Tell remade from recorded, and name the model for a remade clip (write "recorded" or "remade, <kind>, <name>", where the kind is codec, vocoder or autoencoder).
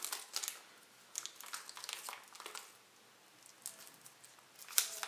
recorded